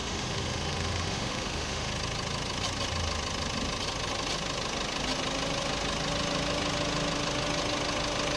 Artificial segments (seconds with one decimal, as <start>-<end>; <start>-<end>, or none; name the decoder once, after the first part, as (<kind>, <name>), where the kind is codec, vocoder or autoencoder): 0.0-1.9 (autoencoder, DAC-VAE)